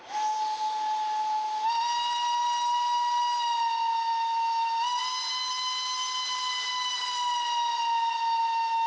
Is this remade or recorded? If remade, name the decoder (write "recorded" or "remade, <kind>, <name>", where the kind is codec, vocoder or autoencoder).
recorded